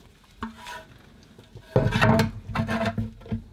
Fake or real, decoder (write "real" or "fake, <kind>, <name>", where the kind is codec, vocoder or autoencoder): real